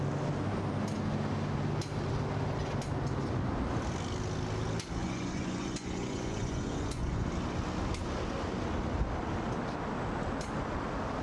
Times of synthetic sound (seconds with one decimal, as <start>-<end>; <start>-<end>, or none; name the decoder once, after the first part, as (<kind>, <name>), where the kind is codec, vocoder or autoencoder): 5.0-7.3 (vocoder, Vocos)